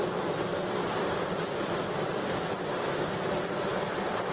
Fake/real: fake